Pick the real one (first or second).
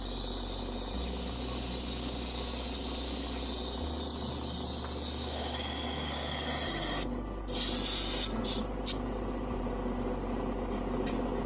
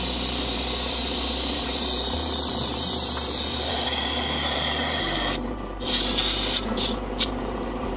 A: first